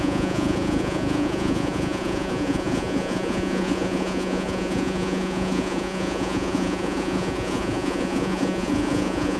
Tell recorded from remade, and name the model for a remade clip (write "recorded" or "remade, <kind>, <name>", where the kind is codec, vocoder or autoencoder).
remade, vocoder, Vocos